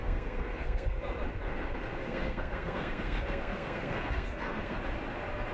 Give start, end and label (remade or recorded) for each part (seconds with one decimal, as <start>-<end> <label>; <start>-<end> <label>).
0.0-1.0 remade; 1.0-1.9 recorded; 1.9-4.8 remade; 4.8-5.5 recorded